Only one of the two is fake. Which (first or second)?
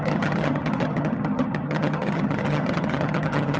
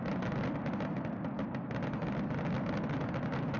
first